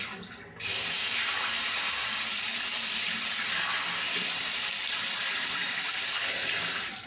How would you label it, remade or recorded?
remade